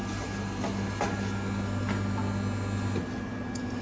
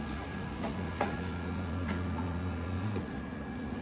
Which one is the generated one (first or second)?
second